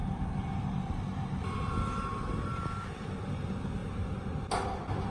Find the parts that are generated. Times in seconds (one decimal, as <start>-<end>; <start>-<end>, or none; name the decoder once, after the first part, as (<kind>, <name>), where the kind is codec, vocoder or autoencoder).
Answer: none